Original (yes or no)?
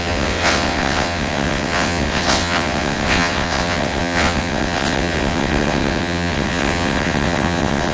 no